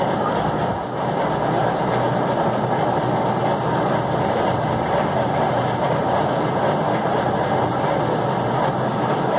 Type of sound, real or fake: real